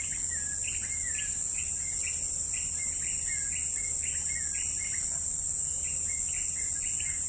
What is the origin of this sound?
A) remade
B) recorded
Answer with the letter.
B